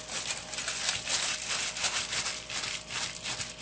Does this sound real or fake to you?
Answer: real